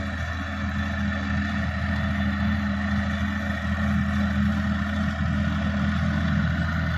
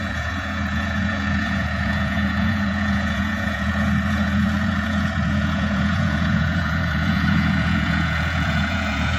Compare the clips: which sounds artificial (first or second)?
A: second